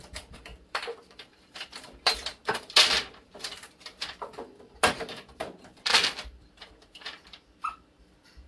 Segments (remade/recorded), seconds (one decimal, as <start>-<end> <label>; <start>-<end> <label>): 0.0-8.5 remade